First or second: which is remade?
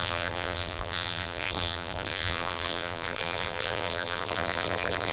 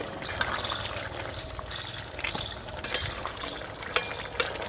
first